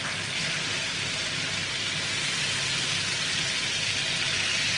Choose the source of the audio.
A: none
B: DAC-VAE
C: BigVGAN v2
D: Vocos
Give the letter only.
A